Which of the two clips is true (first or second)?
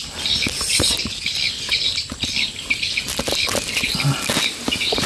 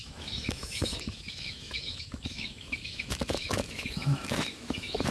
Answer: first